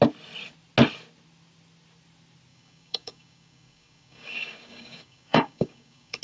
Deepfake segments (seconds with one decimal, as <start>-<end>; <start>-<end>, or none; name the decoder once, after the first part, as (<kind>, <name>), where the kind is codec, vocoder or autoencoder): 2.5-6.2 (codec, DAC)